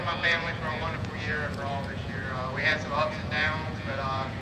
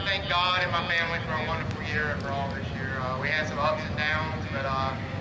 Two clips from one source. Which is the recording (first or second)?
second